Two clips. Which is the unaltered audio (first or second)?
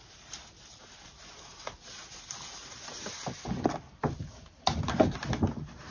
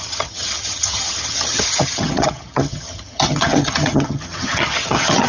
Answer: first